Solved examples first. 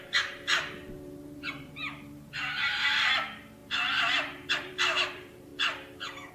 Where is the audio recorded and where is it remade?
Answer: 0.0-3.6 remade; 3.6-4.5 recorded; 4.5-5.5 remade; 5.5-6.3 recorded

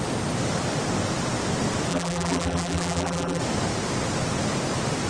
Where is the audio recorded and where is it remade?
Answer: 0.0-1.9 recorded; 1.9-3.4 remade; 3.4-5.1 recorded